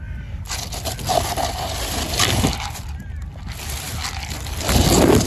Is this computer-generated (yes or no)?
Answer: yes